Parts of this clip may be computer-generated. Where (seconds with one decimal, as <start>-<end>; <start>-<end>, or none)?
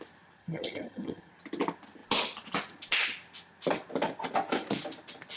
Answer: 0.4-1.3